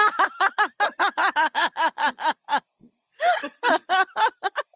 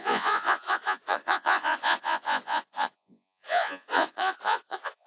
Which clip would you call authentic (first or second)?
first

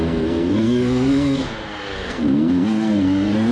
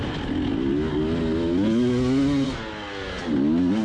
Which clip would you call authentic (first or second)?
second